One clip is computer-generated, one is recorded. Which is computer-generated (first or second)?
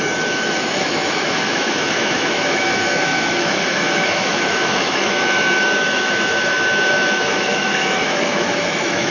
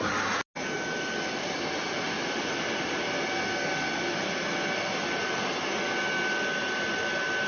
first